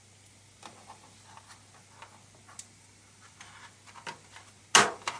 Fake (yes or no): no